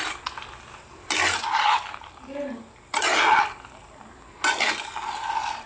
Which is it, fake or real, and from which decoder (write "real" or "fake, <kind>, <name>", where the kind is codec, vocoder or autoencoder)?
real